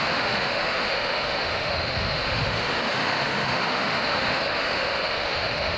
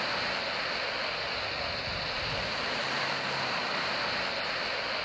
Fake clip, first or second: first